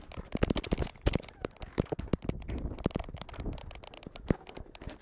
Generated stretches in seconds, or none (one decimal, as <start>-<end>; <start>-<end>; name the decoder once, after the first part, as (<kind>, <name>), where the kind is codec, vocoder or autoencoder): none